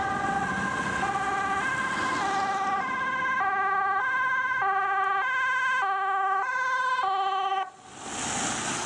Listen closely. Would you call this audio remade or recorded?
recorded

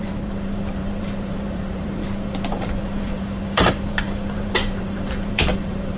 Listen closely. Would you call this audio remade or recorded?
remade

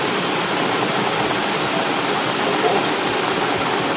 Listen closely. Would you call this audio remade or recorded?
recorded